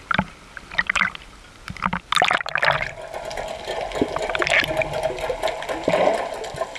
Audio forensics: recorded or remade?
recorded